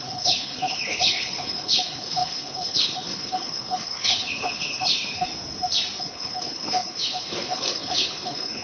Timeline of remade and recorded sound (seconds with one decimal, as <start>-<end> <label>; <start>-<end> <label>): 0.0-5.3 remade; 5.3-6.0 recorded; 6.0-8.6 remade